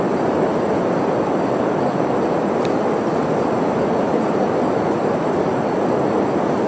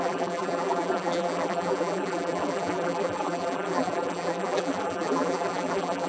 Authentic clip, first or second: first